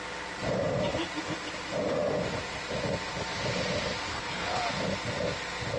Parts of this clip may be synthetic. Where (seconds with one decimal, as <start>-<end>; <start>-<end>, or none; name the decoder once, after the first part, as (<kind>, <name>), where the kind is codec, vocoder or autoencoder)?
4.1-4.6 (codec, HILCodec)